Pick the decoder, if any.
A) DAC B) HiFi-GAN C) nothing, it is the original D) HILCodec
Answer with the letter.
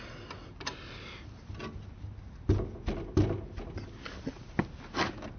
C